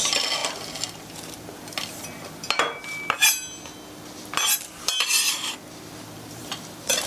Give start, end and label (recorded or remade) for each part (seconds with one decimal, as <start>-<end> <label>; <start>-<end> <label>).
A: 0.0-0.4 remade; 0.4-4.5 recorded; 4.5-7.1 remade